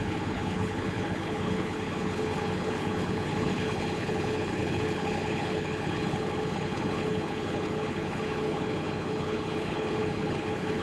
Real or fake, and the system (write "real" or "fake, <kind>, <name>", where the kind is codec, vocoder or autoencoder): fake, codec, HILCodec